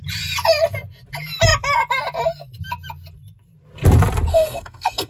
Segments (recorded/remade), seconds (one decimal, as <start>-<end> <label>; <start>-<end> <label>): 0.0-4.3 recorded; 4.3-5.1 remade